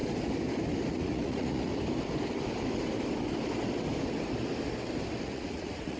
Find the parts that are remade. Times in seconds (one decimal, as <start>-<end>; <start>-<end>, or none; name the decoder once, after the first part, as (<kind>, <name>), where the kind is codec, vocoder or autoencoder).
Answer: 0.9-1.7 (vocoder, Vocos); 5.2-6.0